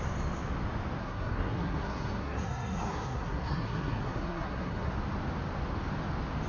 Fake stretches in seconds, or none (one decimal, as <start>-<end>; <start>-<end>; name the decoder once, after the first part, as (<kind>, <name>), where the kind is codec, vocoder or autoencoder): 1.0-4.9 (codec, SNAC)